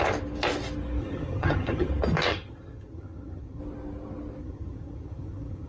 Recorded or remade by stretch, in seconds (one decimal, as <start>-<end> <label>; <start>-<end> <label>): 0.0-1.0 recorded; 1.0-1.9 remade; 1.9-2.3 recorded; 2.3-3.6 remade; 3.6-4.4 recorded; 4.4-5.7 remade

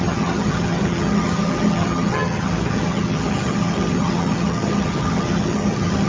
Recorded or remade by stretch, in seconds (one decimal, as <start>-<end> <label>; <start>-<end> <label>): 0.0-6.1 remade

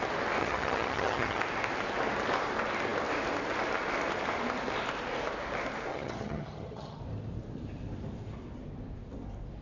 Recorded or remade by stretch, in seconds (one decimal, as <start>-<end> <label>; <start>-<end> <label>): 0.0-0.4 recorded; 0.4-1.4 remade; 1.4-5.9 recorded; 5.9-7.0 remade; 7.0-9.6 recorded

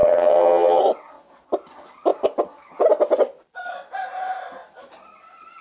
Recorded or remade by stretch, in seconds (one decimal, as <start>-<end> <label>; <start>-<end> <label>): 0.0-0.8 remade; 0.8-5.6 recorded

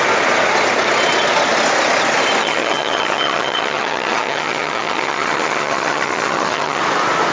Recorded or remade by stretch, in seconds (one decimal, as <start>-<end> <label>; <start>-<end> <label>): 0.0-2.4 recorded; 2.4-6.8 remade; 6.8-7.3 recorded

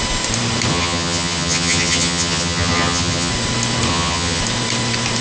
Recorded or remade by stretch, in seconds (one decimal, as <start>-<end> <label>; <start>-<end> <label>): 0.0-0.7 recorded; 0.7-3.3 remade; 3.3-3.9 recorded; 3.9-4.4 remade; 4.4-5.2 recorded

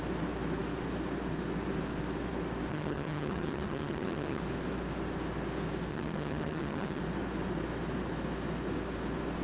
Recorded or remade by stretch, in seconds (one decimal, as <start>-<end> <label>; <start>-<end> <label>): 0.0-2.7 recorded; 2.7-4.4 remade; 4.4-5.9 recorded; 5.9-7.0 remade; 7.0-9.4 recorded

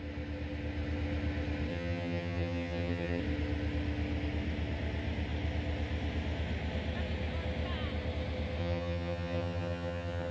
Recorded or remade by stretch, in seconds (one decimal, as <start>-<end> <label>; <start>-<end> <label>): 0.0-1.7 recorded; 1.7-3.2 remade; 3.2-8.6 recorded; 8.6-10.3 remade